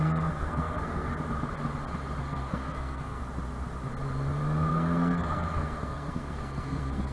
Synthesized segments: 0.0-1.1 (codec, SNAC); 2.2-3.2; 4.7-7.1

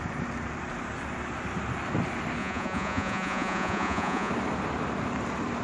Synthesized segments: 2.4-4.3 (vocoder, Vocos)

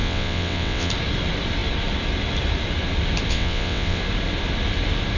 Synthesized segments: 0.0-0.9 (vocoder, WaveNeXt); 3.3-4.0

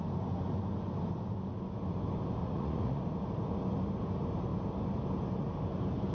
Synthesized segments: 2.4-3.0 (vocoder, Vocos)

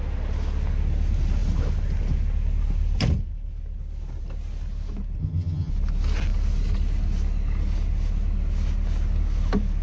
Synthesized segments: 5.2-5.7 (vocoder, HiFi-GAN)

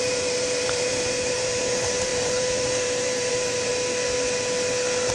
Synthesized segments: 0.0-3.7 (vocoder, BigVGAN v2)